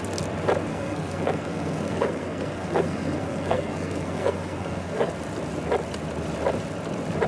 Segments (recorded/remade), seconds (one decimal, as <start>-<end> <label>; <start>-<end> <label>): 0.0-0.7 recorded; 0.7-5.1 remade; 5.1-7.3 recorded